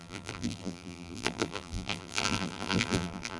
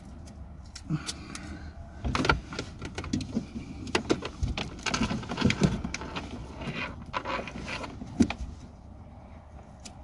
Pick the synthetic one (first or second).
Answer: first